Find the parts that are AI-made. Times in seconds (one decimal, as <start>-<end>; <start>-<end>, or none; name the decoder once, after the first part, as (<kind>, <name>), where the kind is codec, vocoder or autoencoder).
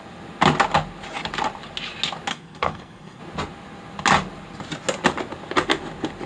2.3-3.2 (codec, SNAC)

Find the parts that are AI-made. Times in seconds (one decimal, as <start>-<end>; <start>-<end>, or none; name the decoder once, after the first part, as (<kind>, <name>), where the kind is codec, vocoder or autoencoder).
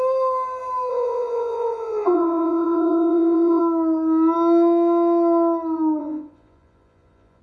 0.9-3.6 (vocoder, Vocos); 6.0-7.4